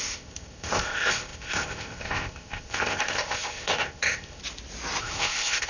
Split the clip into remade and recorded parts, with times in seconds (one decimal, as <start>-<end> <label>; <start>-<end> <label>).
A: 0.0-4.4 remade; 4.4-5.0 recorded; 5.0-5.7 remade